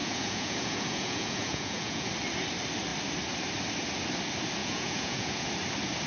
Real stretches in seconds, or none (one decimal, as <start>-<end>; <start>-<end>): 2.1-4.6; 5.5-6.1